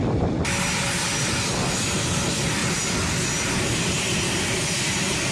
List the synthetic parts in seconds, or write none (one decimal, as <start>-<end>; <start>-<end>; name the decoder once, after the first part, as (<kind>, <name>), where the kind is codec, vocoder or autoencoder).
none